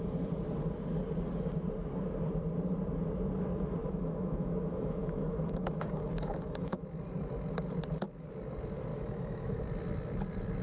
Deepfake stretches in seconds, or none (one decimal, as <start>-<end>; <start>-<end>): 3.8-6.8; 8.9-9.6